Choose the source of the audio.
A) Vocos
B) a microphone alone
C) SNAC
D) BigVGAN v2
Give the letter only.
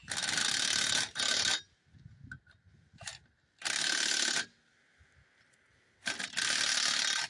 B